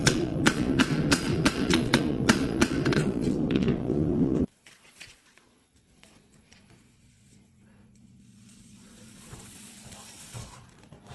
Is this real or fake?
fake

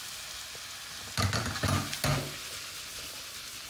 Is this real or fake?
real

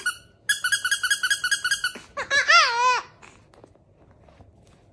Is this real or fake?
real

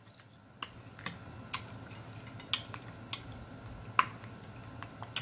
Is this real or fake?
real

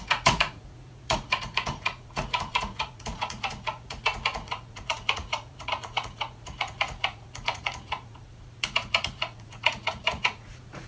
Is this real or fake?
fake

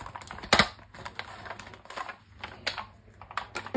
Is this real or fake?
real